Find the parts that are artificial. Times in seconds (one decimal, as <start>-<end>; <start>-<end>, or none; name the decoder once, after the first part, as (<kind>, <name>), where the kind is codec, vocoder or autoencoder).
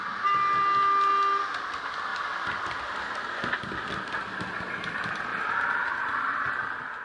5.3-6.5 (vocoder, BigVGAN v2)